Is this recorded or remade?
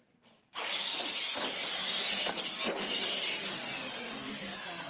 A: recorded